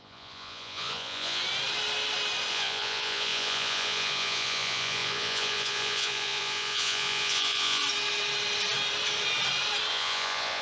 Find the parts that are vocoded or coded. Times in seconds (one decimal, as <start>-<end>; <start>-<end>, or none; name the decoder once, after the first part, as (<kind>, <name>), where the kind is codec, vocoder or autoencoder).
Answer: 0.0-1.4 (vocoder, Vocos); 2.5-7.8; 9.9-10.6